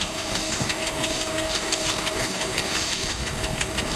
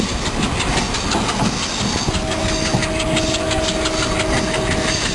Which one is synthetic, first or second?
first